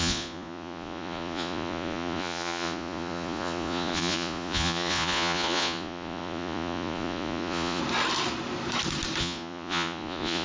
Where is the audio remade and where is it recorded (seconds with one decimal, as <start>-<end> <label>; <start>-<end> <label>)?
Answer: 0.0-7.8 remade; 7.8-9.2 recorded; 9.2-10.4 remade